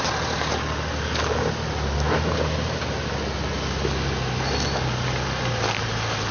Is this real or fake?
real